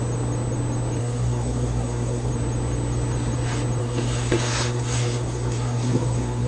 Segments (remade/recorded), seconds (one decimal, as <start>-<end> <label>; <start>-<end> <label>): 0.0-1.0 recorded; 1.0-2.3 remade; 2.3-3.8 recorded; 3.8-6.5 remade